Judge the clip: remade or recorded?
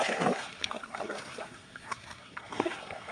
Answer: remade